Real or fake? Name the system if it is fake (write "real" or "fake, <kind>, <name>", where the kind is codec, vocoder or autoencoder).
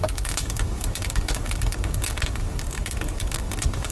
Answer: fake, codec, DAC